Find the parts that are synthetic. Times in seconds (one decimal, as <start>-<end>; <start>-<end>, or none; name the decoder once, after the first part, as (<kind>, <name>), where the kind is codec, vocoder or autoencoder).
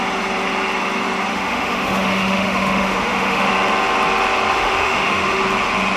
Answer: 1.3-3.5 (autoencoder, DAC-VAE); 4.5-5.4